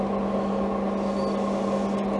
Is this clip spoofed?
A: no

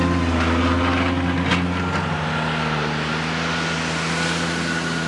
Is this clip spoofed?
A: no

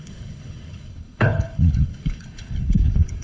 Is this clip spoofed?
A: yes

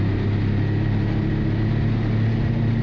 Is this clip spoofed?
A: no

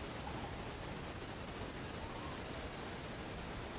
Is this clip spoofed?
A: no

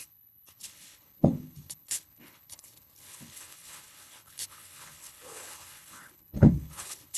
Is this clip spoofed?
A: yes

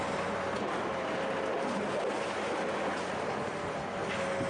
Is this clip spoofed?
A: no